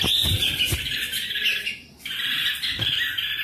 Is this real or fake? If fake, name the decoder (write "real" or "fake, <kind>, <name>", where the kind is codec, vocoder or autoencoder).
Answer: fake, vocoder, BigVGAN v2